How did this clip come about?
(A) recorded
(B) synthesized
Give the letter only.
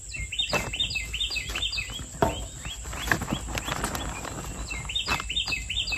A